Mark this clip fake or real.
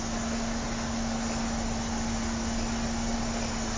real